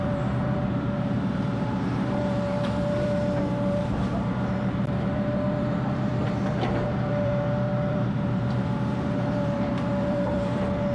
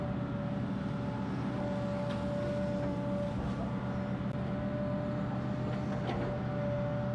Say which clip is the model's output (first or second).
first